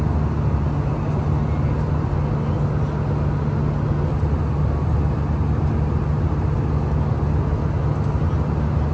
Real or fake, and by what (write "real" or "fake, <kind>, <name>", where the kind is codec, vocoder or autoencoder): real